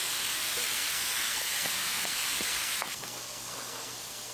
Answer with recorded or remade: remade